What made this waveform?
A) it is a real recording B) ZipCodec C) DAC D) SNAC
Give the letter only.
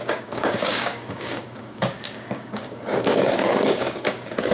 C